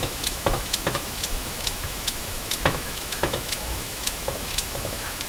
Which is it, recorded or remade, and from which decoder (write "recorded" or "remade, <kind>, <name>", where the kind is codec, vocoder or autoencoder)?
remade, autoencoder, DAC-VAE